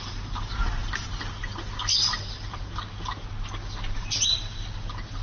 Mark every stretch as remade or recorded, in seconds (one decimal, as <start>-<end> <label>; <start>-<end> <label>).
0.0-5.2 recorded